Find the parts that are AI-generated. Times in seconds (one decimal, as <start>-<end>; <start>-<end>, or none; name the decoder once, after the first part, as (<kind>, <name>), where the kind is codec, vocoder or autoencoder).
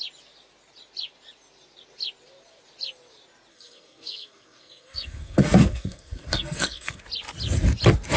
3.5-7.0 (codec, SNAC)